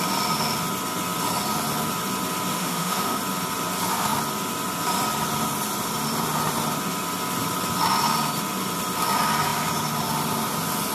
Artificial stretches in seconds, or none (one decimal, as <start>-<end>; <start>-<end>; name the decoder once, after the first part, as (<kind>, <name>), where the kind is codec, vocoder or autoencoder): 2.5-3.2 (autoencoder, DAC-VAE)